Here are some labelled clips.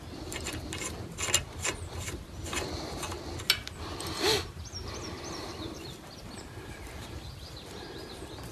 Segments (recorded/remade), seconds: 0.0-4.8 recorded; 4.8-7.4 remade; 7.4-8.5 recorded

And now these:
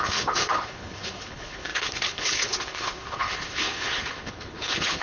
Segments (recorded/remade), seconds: 0.0-5.0 remade

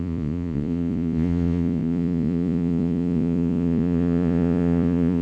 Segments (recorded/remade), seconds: 0.0-5.2 remade